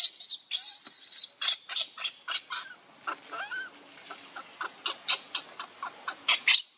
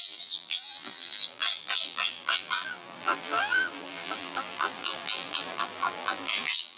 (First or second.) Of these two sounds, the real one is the first